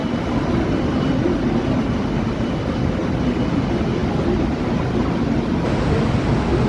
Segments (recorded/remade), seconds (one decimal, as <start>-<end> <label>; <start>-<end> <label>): 0.0-6.7 recorded